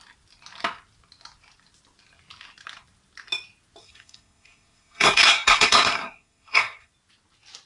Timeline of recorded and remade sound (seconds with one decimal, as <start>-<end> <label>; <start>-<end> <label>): 0.0-3.8 recorded; 3.8-6.9 remade; 6.9-7.7 recorded